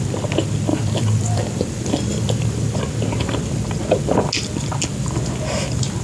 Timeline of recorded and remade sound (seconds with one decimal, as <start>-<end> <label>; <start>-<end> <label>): 0.0-0.7 recorded; 0.7-2.8 remade; 2.8-6.0 recorded